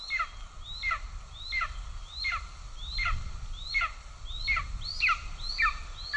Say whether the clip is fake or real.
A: real